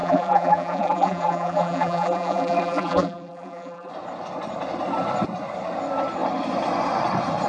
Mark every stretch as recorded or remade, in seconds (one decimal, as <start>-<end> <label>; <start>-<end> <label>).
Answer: 0.0-3.9 remade; 3.9-7.5 recorded